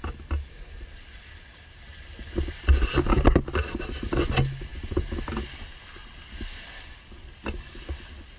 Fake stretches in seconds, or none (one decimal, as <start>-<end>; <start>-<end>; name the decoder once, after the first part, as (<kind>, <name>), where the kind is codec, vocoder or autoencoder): none